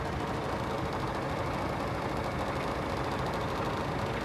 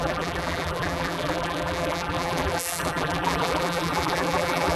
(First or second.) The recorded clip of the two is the first